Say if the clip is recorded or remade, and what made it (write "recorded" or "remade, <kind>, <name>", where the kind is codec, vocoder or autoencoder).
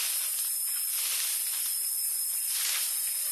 recorded